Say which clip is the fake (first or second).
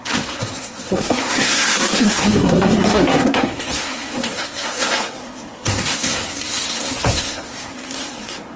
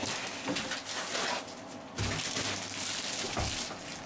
first